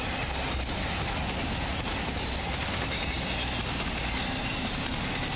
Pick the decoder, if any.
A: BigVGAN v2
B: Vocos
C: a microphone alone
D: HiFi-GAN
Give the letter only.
C